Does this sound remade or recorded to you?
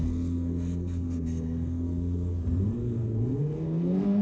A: remade